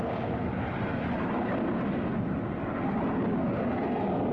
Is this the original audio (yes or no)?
yes